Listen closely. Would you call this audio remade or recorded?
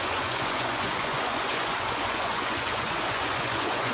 remade